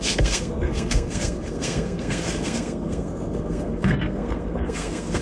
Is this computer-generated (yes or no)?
yes